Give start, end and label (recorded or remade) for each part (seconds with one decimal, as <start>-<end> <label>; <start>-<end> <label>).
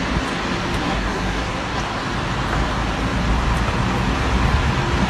0.0-0.8 recorded; 0.8-1.8 remade; 1.8-5.1 recorded